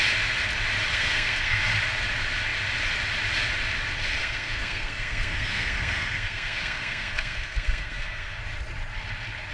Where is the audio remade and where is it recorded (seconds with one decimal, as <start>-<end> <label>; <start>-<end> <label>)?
0.0-0.9 recorded; 0.9-1.6 remade; 1.6-4.2 recorded; 4.2-8.4 remade; 8.4-9.5 recorded